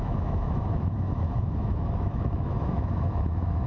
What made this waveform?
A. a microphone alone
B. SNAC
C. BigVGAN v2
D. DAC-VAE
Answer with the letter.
D